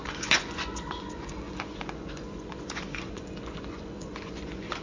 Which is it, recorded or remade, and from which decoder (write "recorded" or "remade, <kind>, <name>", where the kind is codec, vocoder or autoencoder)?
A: remade, vocoder, Vocos